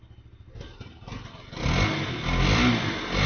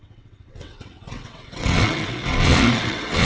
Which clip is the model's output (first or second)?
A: second